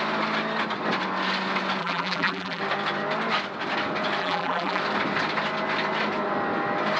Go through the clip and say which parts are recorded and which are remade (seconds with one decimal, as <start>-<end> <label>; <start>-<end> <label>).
0.0-1.8 recorded; 1.8-2.6 remade; 2.6-4.2 recorded; 4.2-4.8 remade; 4.8-7.0 recorded